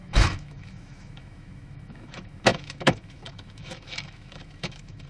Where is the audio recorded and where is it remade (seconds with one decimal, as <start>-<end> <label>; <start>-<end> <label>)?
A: 0.0-5.1 remade